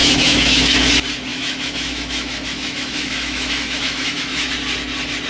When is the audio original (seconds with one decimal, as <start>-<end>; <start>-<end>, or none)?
0.9-1.3; 4.5-5.3